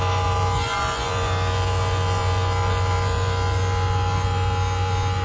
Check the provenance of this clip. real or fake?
fake